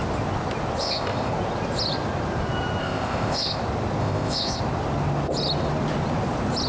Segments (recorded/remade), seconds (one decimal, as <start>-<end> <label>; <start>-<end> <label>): 0.0-0.8 recorded; 0.8-1.3 remade; 1.3-2.8 recorded; 2.8-3.6 remade; 3.6-4.0 recorded; 4.0-4.6 remade; 4.6-6.7 recorded